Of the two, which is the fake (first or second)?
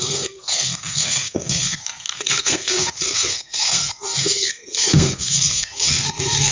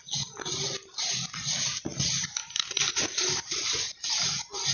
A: first